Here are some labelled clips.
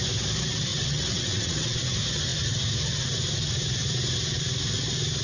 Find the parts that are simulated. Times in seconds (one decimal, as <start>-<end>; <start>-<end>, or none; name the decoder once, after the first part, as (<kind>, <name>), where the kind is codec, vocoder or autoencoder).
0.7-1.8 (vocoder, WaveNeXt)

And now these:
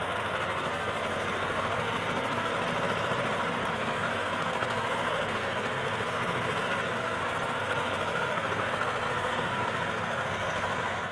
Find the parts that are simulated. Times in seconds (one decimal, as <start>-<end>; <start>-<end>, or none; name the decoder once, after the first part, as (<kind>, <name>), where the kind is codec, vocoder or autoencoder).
0.0-2.5 (codec, SNAC); 3.7-11.1

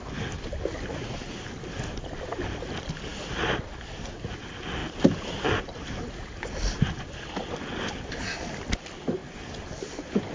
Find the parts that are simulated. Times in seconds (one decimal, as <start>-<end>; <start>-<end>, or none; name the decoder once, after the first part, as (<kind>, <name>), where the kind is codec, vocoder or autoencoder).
none

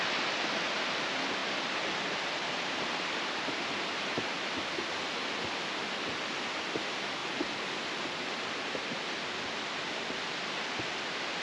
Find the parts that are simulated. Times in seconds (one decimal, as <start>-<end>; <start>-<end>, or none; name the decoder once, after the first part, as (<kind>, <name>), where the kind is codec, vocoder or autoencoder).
1.4-4.5 (vocoder, BigVGAN v2)

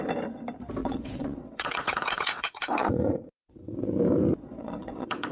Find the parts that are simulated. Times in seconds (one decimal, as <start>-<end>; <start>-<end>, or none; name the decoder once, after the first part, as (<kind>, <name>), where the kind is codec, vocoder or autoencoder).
0.8-4.0 (vocoder, WaveNeXt); 4.5-5.3

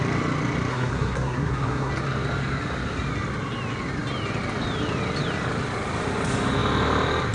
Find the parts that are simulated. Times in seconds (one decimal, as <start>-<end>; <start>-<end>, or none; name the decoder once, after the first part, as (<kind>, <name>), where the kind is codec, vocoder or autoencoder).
0.7-1.9 (codec, SNAC)